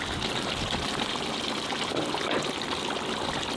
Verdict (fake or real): real